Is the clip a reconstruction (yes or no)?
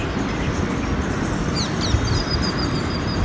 no